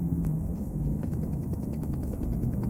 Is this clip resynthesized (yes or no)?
yes